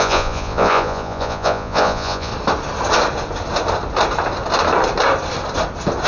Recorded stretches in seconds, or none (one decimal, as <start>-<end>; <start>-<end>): 2.3-6.1